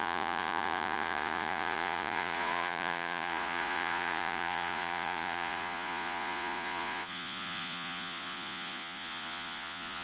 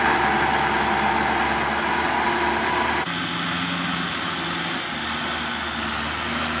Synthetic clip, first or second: first